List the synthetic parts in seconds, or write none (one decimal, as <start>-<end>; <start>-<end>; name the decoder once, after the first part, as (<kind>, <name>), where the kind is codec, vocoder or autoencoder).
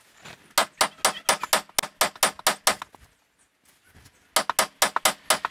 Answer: none